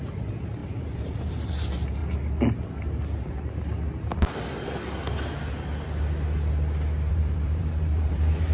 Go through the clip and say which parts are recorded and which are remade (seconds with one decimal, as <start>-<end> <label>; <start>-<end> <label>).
0.0-2.0 remade; 2.0-7.1 recorded; 7.1-8.5 remade